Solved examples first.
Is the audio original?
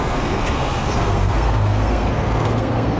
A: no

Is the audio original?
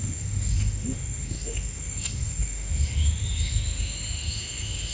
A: no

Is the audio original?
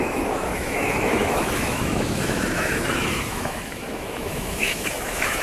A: no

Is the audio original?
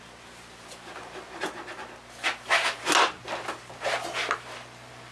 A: yes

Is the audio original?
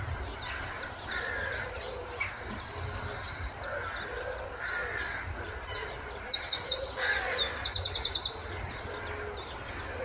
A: yes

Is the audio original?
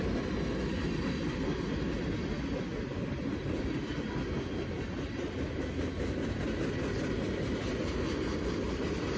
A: yes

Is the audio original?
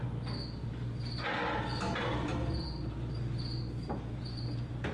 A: yes